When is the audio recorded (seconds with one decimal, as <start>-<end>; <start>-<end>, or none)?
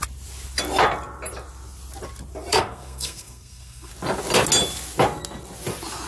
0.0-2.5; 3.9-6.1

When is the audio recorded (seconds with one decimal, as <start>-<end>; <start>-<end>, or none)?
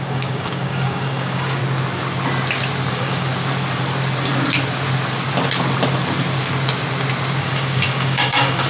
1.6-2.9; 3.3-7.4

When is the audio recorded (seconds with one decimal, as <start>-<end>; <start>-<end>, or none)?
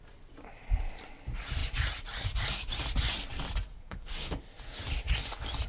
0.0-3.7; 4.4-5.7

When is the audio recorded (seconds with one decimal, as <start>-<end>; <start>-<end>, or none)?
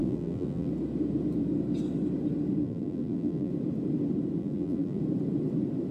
0.7-2.6; 3.5-4.4; 5.0-5.9